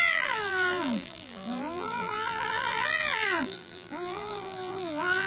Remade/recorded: remade